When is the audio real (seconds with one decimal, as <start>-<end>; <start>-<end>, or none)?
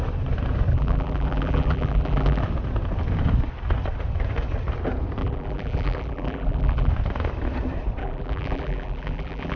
0.0-0.7; 2.4-5.2; 6.9-8.0